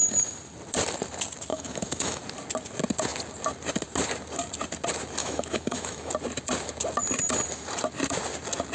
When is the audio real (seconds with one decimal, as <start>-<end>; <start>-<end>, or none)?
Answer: 0.0-1.5; 2.2-5.2; 6.1-8.7